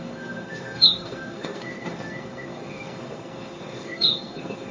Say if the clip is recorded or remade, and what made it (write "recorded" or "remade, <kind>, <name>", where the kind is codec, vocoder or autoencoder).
remade, codec, SNAC